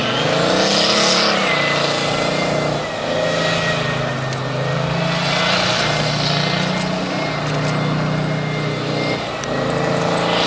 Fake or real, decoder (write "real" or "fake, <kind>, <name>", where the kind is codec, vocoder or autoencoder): real